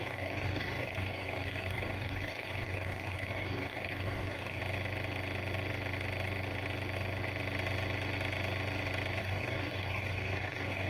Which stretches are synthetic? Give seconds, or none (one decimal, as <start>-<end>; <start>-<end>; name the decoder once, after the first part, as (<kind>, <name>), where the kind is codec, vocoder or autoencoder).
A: 0.0-4.6 (codec, DAC); 9.2-10.9